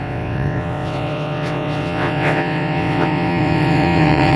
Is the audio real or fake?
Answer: fake